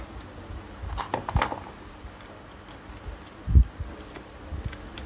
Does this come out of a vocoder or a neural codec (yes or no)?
no